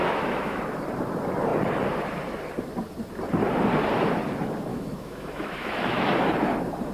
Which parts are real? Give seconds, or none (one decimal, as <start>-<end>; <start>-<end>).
0.6-4.7; 6.1-6.9